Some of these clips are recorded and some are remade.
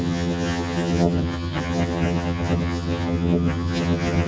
remade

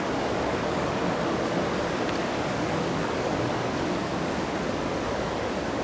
remade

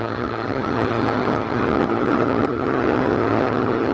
remade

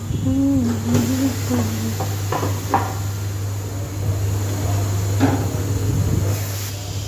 recorded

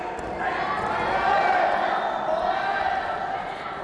recorded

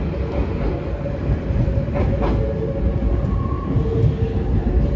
recorded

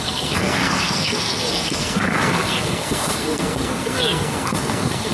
remade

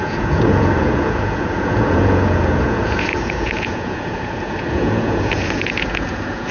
remade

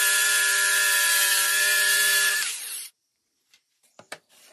remade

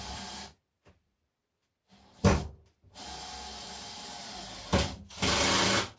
recorded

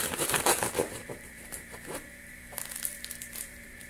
remade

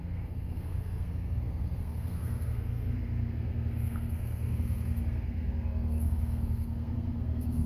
remade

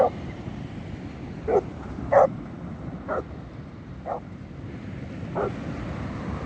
recorded